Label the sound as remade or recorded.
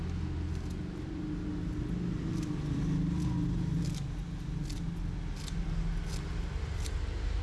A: recorded